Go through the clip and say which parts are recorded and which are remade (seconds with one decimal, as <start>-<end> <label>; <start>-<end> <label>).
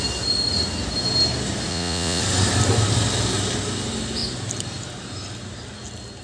0.0-1.7 recorded; 1.7-2.2 remade; 2.2-6.2 recorded